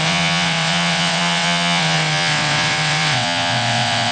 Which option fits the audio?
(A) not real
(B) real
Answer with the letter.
A